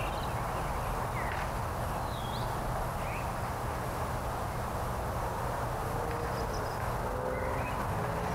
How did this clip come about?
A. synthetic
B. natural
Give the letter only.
B